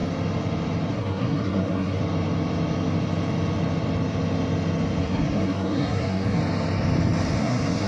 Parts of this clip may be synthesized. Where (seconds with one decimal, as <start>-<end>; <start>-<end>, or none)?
0.9-2.0; 5.0-6.4; 7.4-7.9